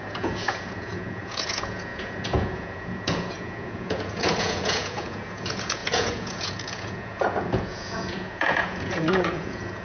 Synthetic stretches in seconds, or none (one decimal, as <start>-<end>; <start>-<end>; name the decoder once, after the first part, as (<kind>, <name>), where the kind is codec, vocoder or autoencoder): 0.0-9.8 (vocoder, Vocos)